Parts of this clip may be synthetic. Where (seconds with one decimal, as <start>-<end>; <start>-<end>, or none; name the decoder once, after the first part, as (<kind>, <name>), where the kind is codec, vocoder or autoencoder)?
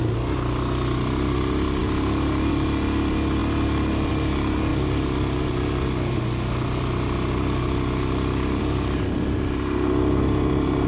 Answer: none